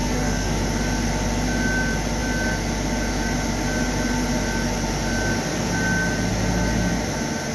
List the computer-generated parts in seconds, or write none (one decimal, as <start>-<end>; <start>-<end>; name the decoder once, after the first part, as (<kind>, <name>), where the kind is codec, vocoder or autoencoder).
0.0-0.6 (autoencoder, DAC-VAE)